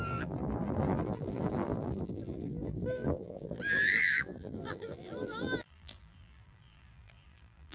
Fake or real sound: fake